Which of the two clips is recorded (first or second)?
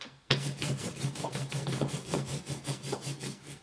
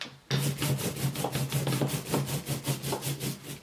second